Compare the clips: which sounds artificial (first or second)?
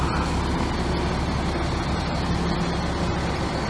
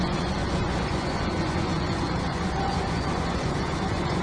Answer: second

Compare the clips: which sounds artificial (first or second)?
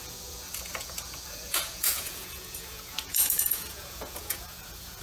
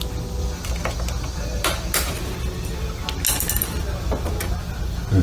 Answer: first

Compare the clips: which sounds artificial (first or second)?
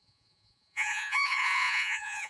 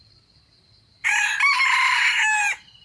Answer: first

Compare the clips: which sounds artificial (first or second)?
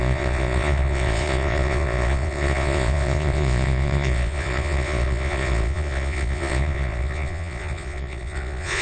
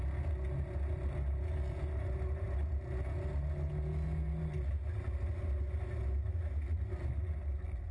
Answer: first